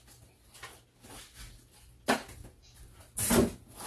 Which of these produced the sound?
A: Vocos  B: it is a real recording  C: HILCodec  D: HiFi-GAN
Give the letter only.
B